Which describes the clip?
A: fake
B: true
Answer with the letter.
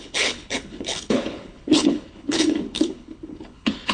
A